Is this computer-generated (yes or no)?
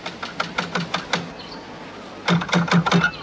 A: no